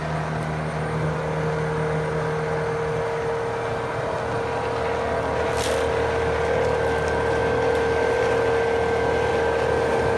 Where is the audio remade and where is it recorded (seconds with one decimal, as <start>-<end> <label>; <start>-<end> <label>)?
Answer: 0.0-10.2 recorded